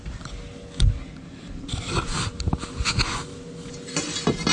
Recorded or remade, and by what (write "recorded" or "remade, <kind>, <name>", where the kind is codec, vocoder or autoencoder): recorded